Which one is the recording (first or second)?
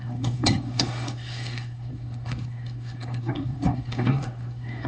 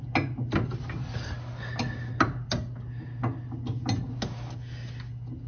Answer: second